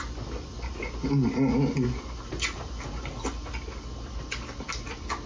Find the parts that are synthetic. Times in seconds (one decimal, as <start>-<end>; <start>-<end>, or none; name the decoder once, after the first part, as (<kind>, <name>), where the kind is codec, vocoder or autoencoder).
0.0-0.7 (vocoder, BigVGAN v2)